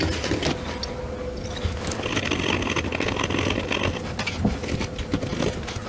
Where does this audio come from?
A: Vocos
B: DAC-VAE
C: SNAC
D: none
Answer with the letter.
D